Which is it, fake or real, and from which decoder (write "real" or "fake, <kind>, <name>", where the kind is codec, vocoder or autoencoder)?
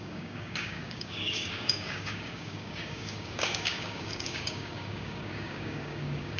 fake, codec, DAC